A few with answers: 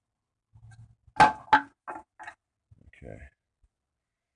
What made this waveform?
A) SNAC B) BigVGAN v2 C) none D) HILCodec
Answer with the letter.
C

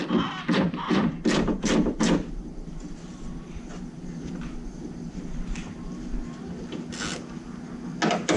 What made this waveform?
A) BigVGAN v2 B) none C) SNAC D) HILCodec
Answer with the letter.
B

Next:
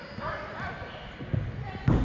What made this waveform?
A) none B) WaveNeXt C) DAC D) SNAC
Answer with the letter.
A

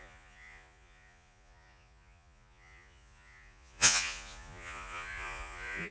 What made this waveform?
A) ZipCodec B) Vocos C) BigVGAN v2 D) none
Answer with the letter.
B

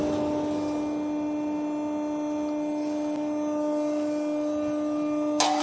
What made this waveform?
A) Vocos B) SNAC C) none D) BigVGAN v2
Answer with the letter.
C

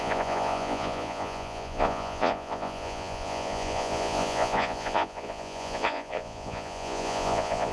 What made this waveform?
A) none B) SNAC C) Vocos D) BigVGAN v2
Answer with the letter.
C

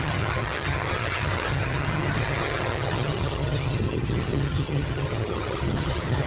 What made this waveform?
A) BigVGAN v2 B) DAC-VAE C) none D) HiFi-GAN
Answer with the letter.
D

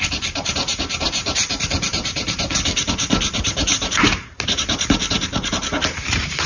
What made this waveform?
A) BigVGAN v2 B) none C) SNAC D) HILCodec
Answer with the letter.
A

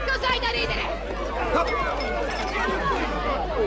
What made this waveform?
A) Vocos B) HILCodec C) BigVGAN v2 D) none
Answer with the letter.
C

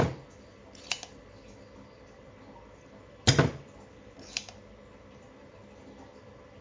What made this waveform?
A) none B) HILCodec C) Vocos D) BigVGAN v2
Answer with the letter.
A